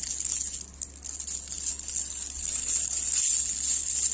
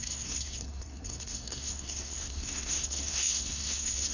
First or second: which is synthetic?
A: second